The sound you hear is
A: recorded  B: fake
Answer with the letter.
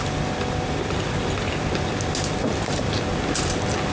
A